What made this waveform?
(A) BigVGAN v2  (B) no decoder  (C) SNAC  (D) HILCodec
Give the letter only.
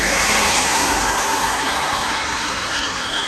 C